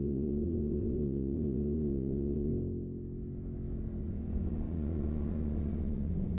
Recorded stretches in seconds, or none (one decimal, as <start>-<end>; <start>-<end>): 2.5-4.0